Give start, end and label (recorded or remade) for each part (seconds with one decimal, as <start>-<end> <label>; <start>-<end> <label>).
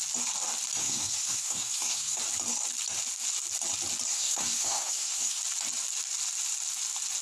0.0-0.8 recorded; 0.8-2.2 remade; 2.2-4.1 recorded; 4.1-5.4 remade; 5.4-7.2 recorded